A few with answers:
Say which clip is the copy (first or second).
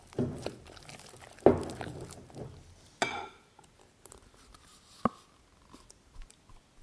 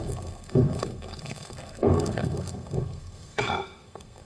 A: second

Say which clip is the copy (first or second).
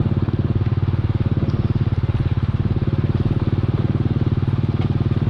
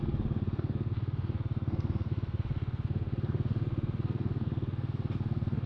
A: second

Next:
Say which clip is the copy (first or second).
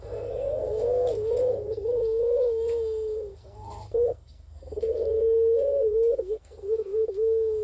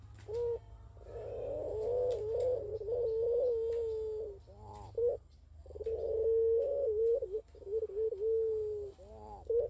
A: first